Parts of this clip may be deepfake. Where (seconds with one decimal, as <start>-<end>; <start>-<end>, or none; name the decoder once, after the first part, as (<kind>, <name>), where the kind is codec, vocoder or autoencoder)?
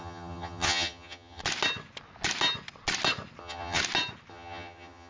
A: 0.0-1.4 (vocoder, HiFi-GAN); 3.4-3.8; 4.3-5.1